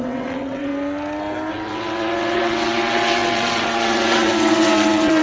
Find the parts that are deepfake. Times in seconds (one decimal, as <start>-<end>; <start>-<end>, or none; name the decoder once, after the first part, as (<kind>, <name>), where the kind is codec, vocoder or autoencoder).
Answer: 0.0-0.7 (vocoder, WaveNeXt); 1.5-5.2